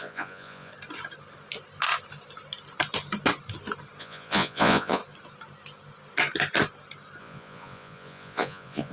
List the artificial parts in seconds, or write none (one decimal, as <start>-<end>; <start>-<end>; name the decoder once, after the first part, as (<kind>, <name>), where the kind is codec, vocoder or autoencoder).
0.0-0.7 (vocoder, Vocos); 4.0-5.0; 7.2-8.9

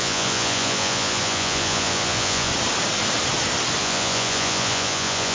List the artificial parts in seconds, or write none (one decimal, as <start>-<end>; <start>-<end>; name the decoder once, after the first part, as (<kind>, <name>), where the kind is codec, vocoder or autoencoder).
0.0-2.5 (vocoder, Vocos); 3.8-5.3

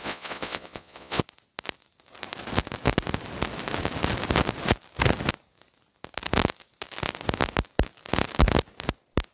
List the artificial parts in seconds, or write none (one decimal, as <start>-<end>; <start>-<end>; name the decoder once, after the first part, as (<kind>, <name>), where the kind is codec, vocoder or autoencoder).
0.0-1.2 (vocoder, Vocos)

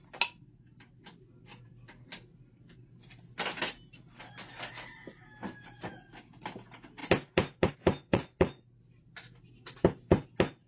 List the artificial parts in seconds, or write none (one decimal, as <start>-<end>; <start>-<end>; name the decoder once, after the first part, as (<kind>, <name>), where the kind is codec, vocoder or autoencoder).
8.1-8.6 (vocoder, Vocos)

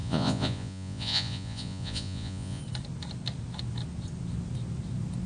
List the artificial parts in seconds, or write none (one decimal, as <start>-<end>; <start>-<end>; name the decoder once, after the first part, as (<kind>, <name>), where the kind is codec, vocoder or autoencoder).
0.0-2.6 (vocoder, Vocos)